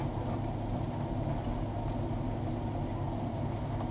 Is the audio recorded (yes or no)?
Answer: yes